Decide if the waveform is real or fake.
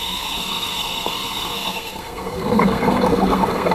fake